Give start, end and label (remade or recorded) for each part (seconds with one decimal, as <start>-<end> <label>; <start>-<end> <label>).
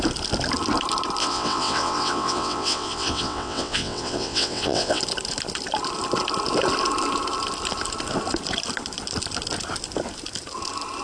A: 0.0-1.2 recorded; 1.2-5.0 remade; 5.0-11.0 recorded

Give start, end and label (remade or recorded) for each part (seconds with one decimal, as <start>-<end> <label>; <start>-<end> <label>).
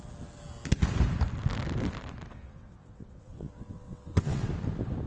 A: 0.0-2.3 recorded; 2.3-4.5 remade; 4.5-5.1 recorded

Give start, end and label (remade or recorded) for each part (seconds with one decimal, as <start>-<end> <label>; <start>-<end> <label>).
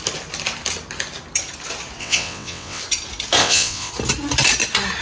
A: 0.0-2.0 recorded; 2.0-2.8 remade; 2.8-3.4 recorded; 3.4-3.9 remade; 3.9-5.0 recorded